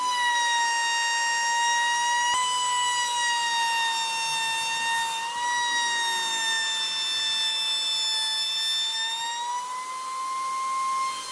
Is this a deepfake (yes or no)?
no